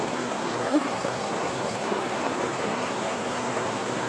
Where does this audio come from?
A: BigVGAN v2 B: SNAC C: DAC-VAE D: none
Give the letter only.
B